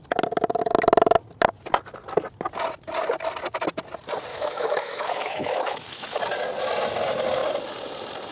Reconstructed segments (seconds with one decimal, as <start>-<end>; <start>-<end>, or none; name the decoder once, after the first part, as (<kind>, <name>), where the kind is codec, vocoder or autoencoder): 4.3-6.2 (autoencoder, DAC-VAE)